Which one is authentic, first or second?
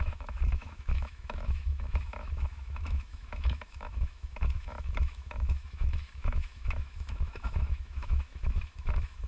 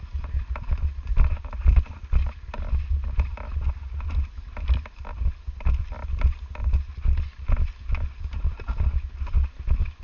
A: second